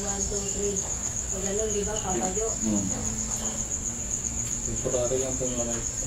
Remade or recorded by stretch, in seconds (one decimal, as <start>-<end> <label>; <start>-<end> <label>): 0.0-3.0 remade; 3.0-4.0 recorded; 4.0-4.9 remade; 4.9-6.1 recorded